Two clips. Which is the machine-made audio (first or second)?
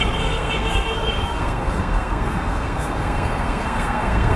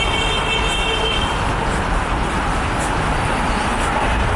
first